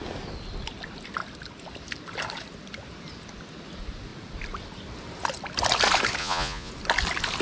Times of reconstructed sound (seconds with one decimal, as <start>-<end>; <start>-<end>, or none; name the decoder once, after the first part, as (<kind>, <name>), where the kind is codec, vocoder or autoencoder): 6.2-6.7 (vocoder, Vocos)